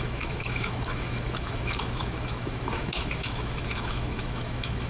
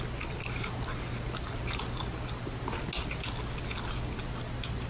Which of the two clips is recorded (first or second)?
second